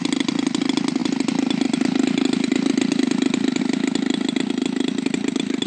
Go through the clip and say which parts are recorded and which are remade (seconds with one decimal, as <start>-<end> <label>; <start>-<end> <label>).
0.0-5.7 recorded